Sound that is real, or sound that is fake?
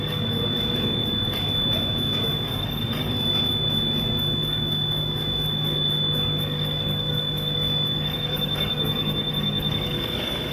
fake